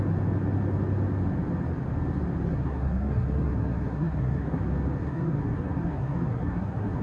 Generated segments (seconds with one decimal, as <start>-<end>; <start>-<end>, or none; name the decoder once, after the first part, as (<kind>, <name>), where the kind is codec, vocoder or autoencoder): 2.5-4.6 (codec, SNAC); 5.0-7.0